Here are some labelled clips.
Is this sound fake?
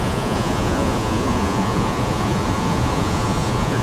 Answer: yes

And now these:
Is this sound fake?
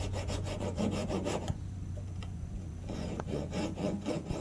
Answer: yes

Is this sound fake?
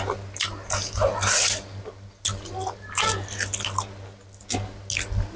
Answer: no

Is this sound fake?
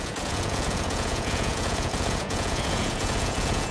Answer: yes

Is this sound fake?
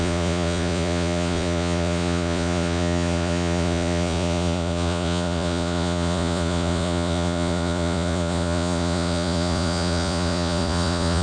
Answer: yes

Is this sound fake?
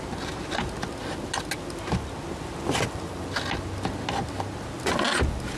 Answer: no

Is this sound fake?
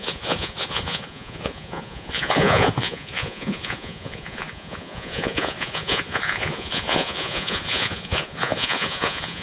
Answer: yes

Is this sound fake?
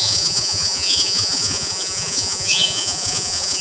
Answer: yes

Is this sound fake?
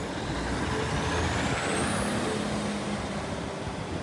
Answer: no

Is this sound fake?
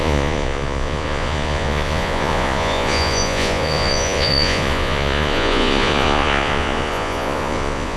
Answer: yes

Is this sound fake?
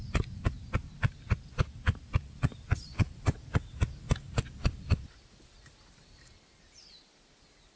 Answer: no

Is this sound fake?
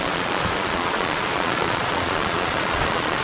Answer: yes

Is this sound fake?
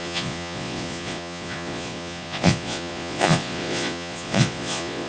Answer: yes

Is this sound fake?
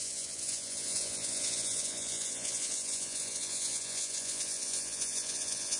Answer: yes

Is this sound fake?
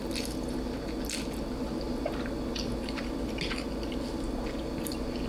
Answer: no